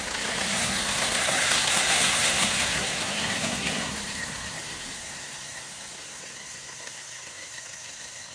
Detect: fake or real fake